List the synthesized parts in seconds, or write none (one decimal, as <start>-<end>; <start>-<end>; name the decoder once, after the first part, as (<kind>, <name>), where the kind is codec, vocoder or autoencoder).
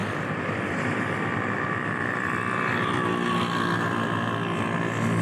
0.0-3.1 (vocoder, BigVGAN v2)